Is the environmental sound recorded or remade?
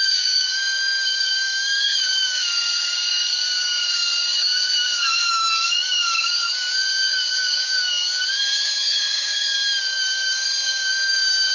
remade